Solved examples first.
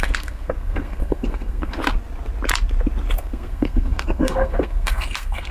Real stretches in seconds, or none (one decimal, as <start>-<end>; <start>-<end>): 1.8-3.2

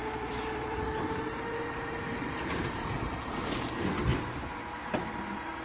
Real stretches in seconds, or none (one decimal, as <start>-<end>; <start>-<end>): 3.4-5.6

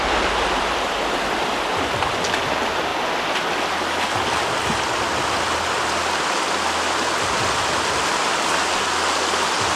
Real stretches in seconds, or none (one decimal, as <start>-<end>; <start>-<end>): 0.0-9.8

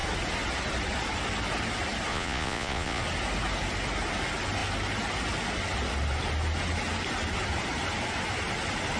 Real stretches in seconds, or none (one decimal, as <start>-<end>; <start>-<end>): 0.0-2.1; 3.0-9.0

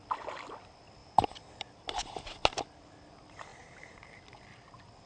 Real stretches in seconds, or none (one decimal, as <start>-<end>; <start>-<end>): 0.0-1.0; 1.7-3.5; 4.1-5.1